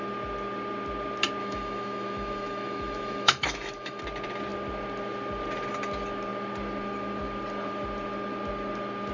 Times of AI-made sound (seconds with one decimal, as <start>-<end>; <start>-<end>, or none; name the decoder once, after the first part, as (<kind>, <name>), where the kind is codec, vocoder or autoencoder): 1.4-4.0 (autoencoder, DAC-VAE)